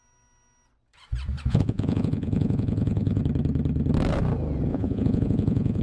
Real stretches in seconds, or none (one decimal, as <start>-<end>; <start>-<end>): 0.0-1.5; 3.2-4.7